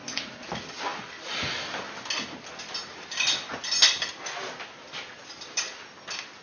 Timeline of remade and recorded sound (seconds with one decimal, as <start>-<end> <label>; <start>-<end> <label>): 0.0-0.5 remade; 0.5-6.4 recorded